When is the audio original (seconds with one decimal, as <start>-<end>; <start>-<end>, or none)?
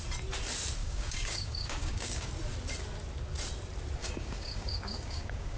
0.0-0.8; 2.3-4.0